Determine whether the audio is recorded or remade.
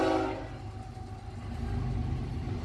recorded